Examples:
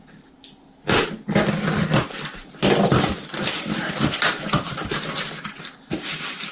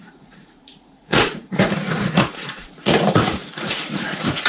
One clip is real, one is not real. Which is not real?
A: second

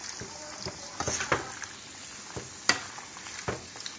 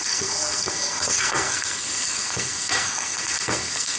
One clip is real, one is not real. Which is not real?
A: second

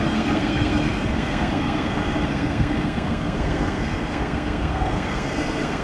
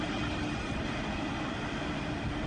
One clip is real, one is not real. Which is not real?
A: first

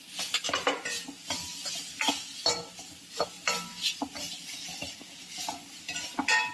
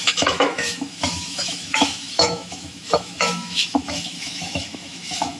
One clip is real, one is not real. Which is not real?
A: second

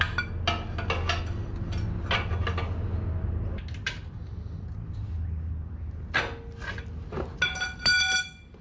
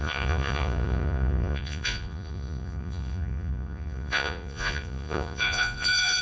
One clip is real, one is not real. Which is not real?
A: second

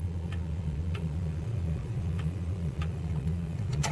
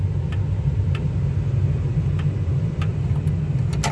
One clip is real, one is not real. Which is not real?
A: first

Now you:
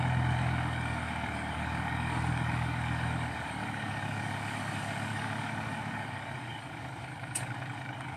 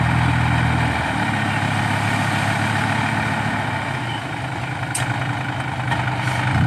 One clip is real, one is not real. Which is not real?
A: first